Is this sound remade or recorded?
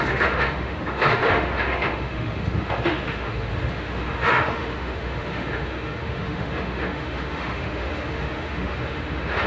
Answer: remade